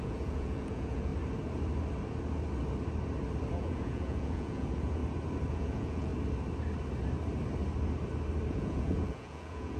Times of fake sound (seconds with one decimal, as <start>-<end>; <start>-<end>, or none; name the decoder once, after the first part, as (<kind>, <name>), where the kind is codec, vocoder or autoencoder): 0.0-1.1 (vocoder, Vocos); 3.5-5.0; 5.5-6.1; 8.5-9.8